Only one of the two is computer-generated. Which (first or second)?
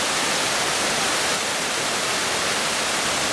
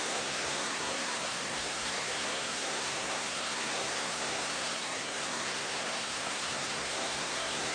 second